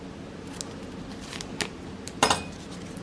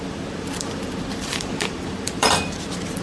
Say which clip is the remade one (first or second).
second